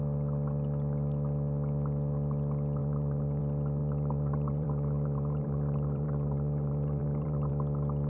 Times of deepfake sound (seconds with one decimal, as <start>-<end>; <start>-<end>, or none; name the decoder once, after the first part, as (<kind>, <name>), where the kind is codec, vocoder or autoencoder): 2.8-3.4 (vocoder, BigVGAN v2); 3.8-7.5